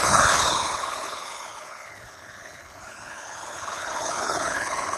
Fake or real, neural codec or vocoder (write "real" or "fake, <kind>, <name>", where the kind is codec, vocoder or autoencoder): fake, codec, HILCodec